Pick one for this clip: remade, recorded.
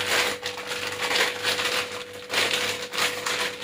recorded